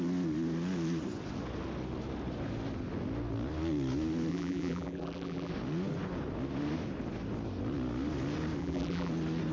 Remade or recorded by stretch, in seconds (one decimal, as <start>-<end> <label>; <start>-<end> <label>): 0.0-4.3 recorded; 4.3-5.5 remade; 5.5-8.6 recorded; 8.6-9.1 remade; 9.1-9.5 recorded